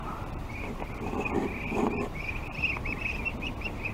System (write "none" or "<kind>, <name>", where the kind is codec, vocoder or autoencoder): vocoder, BigVGAN v2